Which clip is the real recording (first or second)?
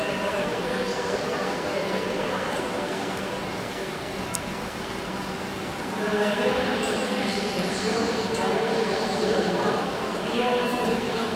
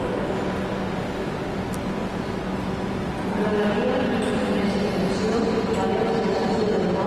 second